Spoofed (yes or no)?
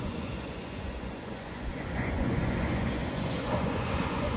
yes